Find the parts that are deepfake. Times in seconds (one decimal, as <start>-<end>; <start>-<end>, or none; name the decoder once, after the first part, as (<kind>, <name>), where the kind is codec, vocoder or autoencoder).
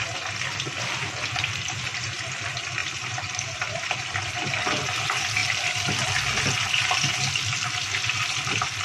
2.8-4.6 (vocoder, BigVGAN v2)